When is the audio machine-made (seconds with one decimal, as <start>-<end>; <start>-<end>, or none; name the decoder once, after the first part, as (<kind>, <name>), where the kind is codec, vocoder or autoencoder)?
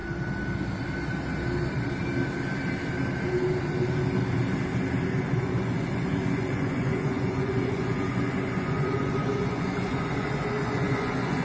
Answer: 5.2-11.4 (vocoder, Vocos)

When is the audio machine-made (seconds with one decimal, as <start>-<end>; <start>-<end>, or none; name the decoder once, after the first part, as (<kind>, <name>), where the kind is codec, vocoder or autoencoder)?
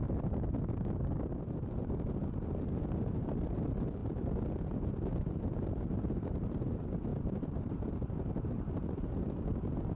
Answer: 7.1-7.9 (vocoder, BigVGAN v2)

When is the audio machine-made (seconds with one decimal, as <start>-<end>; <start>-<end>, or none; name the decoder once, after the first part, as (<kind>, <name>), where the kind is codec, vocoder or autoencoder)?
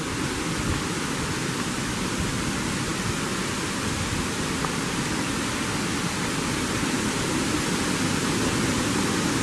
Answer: none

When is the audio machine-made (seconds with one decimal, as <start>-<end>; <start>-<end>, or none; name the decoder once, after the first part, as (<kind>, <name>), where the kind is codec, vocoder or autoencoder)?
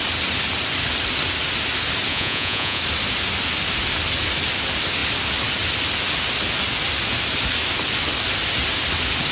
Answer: 2.1-2.8 (vocoder, Vocos)